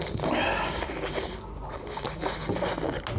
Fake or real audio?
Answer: real